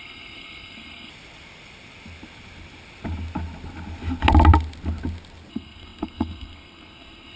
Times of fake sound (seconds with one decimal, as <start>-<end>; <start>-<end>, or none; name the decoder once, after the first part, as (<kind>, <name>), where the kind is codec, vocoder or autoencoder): 0.0-1.1 (codec, SNAC); 5.5-7.4

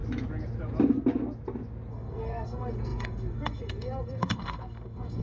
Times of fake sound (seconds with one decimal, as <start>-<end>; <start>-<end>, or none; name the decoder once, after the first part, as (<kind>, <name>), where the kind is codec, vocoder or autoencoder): 1.9-5.2 (codec, SNAC)